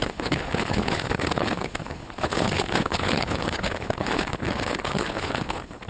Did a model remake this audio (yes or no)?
yes